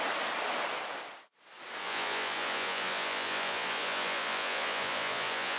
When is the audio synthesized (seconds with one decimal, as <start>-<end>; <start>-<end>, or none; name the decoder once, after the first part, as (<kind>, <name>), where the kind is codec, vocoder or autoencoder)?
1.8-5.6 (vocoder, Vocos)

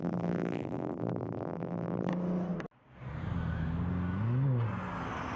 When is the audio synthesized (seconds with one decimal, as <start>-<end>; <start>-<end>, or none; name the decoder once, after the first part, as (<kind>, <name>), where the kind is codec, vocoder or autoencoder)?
0.0-2.1 (vocoder, BigVGAN v2)

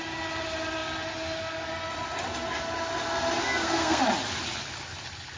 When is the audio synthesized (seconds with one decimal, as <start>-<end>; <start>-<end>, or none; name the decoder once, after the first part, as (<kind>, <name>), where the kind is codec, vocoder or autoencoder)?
3.4-4.0 (codec, SNAC)

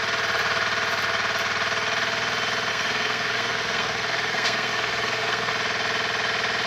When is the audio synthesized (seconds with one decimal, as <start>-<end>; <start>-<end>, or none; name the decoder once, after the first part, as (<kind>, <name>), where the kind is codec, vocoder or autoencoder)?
2.7-5.5 (codec, SNAC)